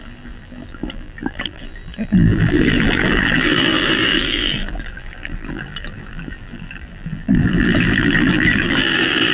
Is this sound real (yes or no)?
no